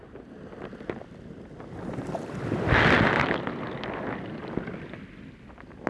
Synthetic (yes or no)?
no